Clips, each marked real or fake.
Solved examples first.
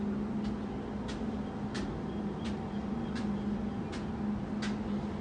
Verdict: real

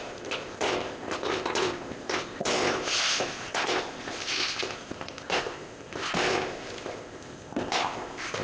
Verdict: fake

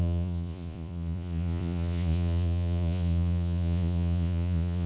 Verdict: fake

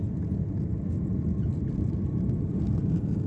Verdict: real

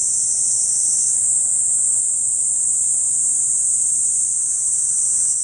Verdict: real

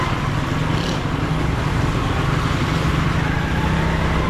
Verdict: real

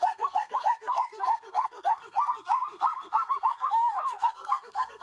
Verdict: fake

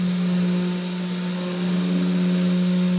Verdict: real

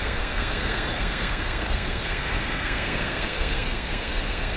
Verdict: fake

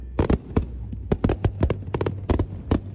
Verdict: real